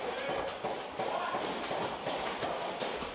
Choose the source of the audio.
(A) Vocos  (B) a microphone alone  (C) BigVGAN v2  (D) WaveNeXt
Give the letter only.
B